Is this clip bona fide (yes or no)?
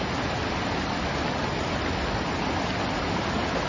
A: yes